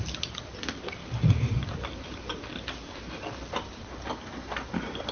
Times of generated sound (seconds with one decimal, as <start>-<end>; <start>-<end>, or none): 1.0-2.4